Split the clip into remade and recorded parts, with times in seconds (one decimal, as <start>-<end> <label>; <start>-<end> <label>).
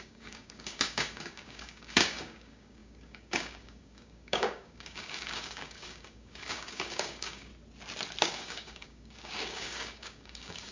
0.0-7.5 remade; 7.5-8.2 recorded; 8.2-10.7 remade